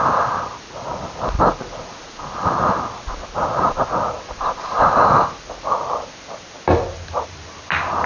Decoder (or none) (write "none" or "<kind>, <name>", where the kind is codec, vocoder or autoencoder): none